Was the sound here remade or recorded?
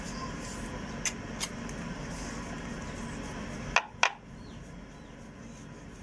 recorded